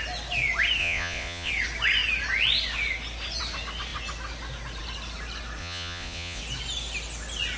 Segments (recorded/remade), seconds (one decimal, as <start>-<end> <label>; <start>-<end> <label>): 0.0-0.8 recorded; 0.8-1.5 remade; 1.5-5.6 recorded; 5.6-6.4 remade; 6.4-7.6 recorded